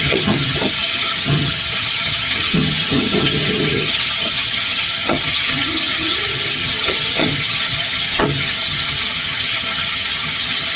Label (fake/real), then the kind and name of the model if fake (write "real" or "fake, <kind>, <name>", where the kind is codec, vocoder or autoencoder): fake, vocoder, HiFi-GAN